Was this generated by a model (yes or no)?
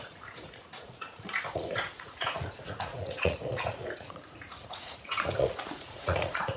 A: yes